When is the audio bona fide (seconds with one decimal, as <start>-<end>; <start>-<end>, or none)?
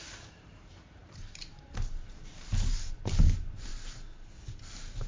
3.7-4.6